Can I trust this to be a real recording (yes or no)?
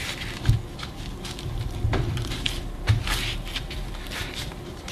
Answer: no